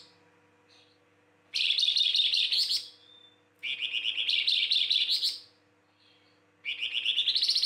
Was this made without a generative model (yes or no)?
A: yes